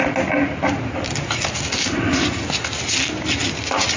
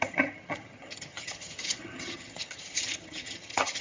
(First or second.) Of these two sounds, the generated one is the second